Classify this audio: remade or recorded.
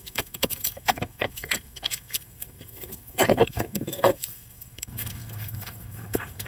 remade